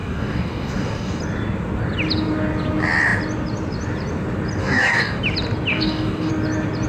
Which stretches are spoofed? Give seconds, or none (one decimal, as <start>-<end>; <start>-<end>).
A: 0.0-1.2; 4.6-5.2; 5.7-6.3